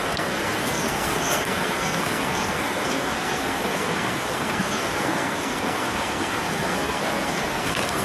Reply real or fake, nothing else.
fake